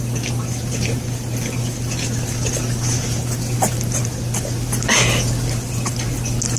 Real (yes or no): yes